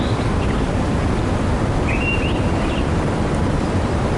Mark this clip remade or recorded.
recorded